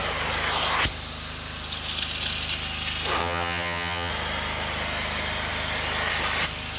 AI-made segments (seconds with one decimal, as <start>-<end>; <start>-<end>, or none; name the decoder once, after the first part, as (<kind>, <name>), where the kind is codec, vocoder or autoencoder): 3.2-4.1 (vocoder, HiFi-GAN)